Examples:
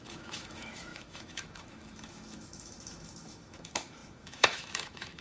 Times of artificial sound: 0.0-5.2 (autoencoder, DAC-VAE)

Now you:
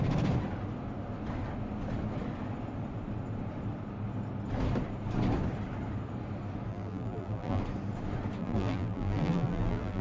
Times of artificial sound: 6.7-7.6 (vocoder, BigVGAN v2); 8.4-10.0